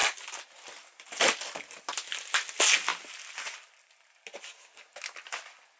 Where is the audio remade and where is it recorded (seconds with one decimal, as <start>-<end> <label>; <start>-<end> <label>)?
0.0-5.8 recorded